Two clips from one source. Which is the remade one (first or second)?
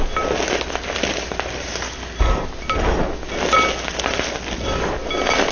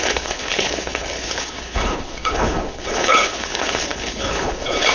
second